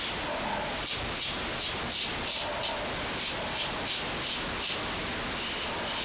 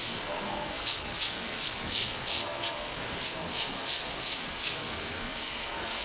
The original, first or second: first